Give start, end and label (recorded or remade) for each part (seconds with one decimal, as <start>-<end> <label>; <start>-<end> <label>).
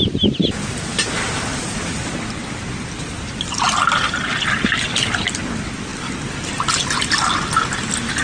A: 0.0-8.2 recorded